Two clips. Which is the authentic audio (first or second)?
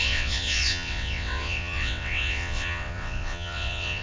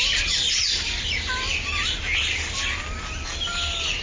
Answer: second